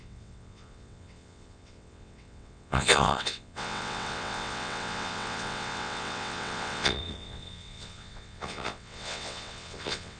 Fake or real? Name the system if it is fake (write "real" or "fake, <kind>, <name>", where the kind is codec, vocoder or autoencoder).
fake, vocoder, WaveNeXt